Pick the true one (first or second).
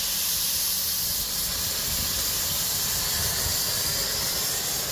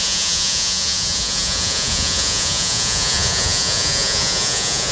first